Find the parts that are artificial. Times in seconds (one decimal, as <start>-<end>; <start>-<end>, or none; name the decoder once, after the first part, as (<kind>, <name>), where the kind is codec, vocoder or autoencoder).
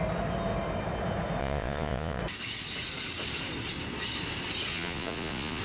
1.4-2.2 (vocoder, Vocos); 4.7-5.6